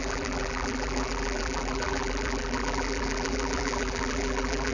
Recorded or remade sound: remade